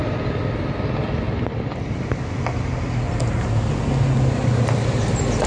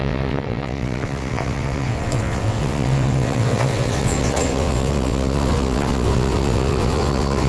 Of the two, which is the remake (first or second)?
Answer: second